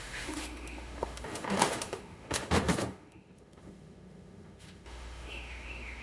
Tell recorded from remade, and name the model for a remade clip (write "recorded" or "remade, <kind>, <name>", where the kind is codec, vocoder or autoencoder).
remade, autoencoder, DAC-VAE